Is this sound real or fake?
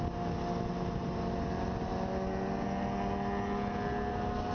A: real